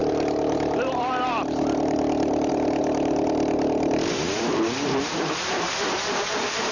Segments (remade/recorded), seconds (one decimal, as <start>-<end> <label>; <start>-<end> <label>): 0.0-6.7 remade